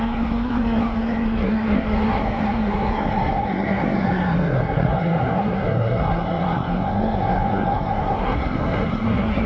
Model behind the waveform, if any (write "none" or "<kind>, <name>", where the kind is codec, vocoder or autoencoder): codec, SNAC